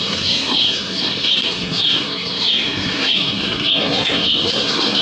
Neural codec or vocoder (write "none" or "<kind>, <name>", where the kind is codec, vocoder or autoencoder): codec, SNAC